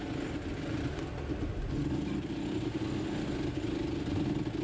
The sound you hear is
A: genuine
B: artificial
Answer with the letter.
A